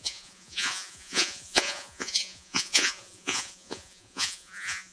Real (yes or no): no